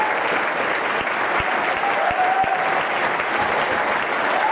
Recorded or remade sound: recorded